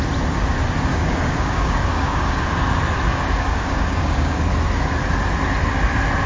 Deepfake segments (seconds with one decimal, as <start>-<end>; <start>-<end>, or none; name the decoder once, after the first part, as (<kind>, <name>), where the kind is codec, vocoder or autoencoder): 0.9-2.4 (codec, DAC); 3.1-4.5